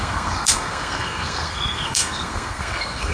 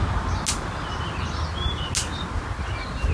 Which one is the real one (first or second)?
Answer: second